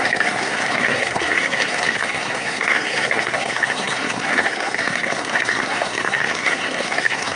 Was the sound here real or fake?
fake